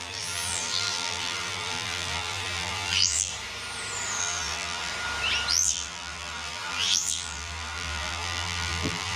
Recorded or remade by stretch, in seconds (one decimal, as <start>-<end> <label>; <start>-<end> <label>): 0.0-3.3 remade; 3.3-4.2 recorded; 4.2-4.9 remade; 4.9-5.5 recorded; 5.5-9.2 remade